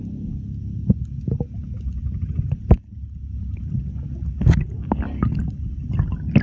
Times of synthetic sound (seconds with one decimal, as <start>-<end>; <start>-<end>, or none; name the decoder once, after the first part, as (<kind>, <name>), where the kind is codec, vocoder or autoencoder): none